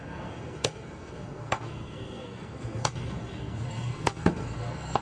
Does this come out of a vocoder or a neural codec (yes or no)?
yes